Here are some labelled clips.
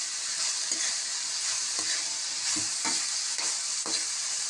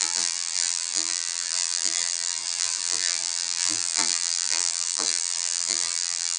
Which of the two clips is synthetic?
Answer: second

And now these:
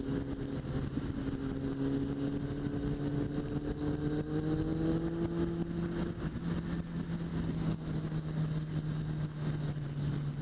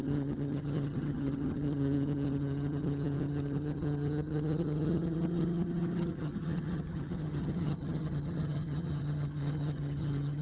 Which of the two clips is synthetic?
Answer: second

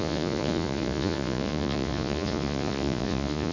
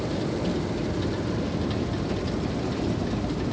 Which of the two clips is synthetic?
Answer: first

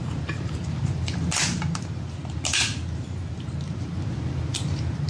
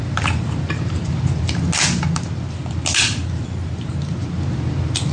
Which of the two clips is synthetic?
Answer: first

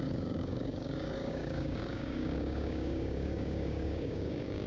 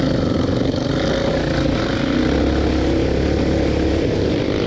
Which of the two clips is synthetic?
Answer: first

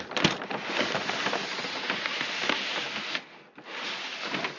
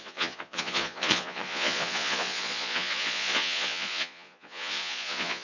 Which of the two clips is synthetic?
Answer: second